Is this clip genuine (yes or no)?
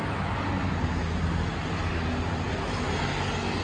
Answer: yes